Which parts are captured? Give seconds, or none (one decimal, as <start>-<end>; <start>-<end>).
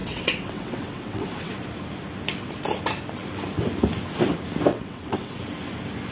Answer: 1.5-4.7; 5.4-6.1